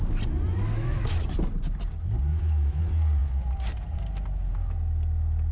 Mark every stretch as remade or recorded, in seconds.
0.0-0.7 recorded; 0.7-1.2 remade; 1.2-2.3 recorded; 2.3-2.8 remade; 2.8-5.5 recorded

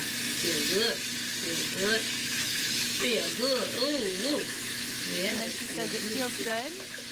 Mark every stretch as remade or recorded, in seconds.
0.0-2.2 recorded; 2.2-6.5 remade; 6.5-7.1 recorded

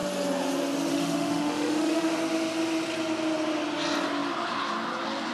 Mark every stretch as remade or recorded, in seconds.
0.0-0.9 recorded; 0.9-2.1 remade; 2.1-5.3 recorded

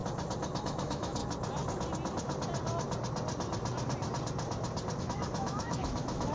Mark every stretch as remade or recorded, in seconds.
0.0-0.6 recorded; 0.6-1.2 remade; 1.2-5.0 recorded; 5.0-6.3 remade